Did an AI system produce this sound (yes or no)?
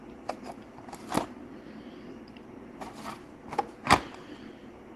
no